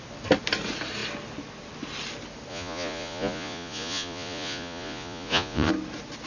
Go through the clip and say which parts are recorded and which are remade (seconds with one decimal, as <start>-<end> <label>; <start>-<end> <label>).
0.0-2.5 recorded; 2.5-5.7 remade; 5.7-6.3 recorded